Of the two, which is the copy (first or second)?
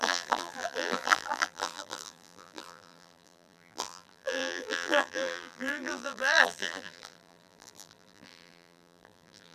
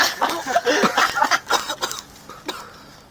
first